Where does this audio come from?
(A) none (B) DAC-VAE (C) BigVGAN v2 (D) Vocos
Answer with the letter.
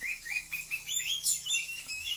B